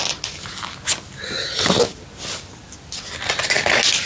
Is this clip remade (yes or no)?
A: no